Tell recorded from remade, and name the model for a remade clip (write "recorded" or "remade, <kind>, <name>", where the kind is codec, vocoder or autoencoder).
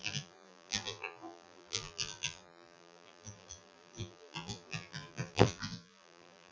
remade, vocoder, BigVGAN v2